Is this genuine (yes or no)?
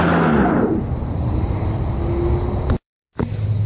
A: no